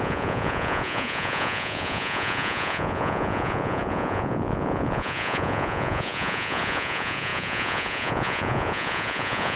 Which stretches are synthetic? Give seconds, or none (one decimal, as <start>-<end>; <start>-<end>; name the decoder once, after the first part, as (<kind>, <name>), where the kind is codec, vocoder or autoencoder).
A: 0.0-9.6 (vocoder, Vocos)